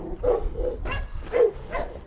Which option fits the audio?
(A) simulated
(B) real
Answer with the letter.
B